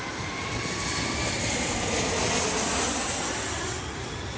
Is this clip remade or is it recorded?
recorded